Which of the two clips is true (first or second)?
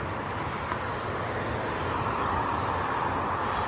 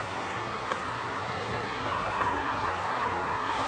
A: first